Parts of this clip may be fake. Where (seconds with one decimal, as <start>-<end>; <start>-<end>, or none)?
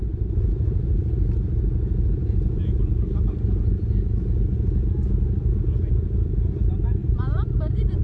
0.0-1.0; 2.2-3.2; 7.0-8.0